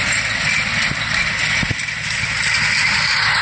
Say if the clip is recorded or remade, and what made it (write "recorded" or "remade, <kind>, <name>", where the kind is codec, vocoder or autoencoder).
recorded